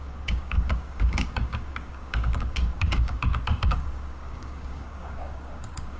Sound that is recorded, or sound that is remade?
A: remade